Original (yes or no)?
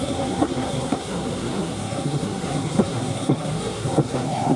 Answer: no